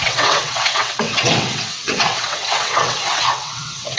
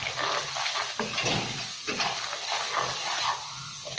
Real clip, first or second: second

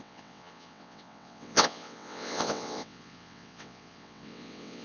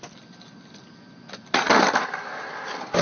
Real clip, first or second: second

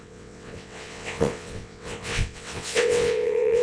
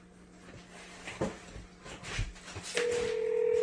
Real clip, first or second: second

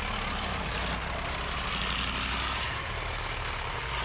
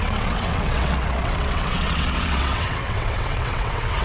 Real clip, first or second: first